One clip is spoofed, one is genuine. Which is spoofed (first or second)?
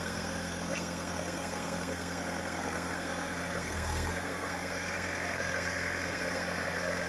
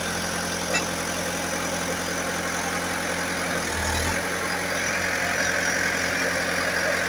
first